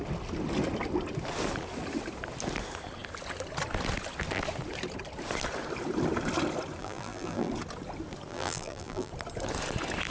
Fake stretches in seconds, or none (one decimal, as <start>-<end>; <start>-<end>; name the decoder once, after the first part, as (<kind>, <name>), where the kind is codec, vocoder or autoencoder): 6.8-7.5 (vocoder, BigVGAN v2); 8.3-9.1